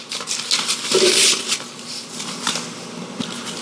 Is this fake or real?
real